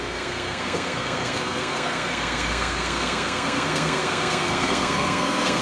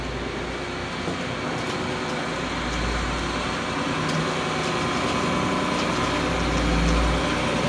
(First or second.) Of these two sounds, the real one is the second